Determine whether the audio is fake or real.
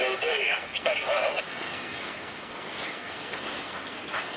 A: fake